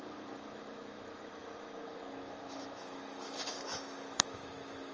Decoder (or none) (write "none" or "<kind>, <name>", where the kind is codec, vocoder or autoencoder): autoencoder, DAC-VAE